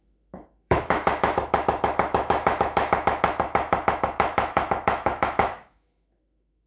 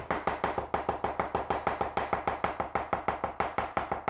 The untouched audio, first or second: second